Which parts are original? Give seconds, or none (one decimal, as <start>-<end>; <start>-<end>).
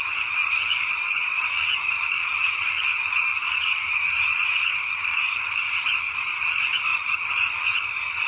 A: none